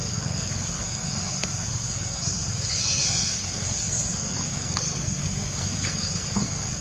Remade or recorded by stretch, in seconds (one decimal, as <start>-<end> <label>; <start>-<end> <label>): 0.0-6.8 remade